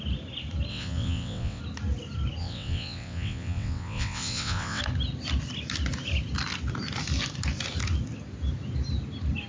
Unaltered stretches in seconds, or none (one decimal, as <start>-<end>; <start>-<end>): 0.0-0.7; 1.6-2.4; 4.8-9.5